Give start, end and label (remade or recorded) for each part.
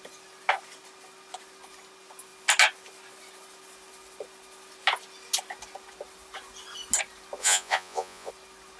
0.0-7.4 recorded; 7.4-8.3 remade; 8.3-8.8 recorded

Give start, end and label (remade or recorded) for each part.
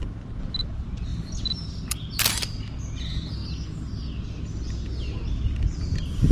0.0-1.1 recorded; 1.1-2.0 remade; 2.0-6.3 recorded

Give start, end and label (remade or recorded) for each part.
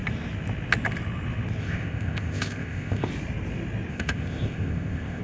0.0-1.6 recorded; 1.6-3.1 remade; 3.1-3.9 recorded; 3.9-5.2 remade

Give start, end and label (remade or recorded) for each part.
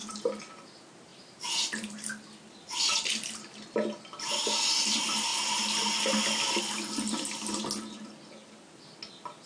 0.0-0.5 remade; 0.5-9.5 recorded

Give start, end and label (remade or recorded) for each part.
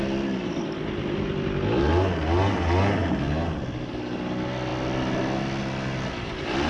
0.0-6.7 recorded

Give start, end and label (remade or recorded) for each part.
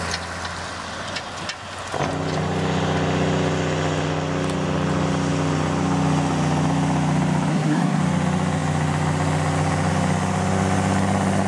0.0-7.5 recorded; 7.5-8.0 remade; 8.0-11.5 recorded